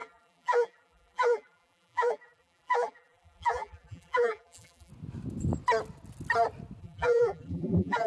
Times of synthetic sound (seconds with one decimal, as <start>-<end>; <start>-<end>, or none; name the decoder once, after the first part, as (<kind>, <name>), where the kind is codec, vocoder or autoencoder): 0.0-4.9 (vocoder, BigVGAN v2); 6.8-8.1